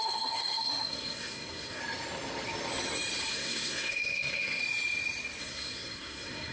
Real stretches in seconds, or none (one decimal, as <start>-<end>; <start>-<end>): 1.8-3.3; 4.6-5.4